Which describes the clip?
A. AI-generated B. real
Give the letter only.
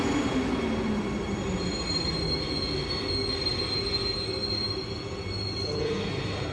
B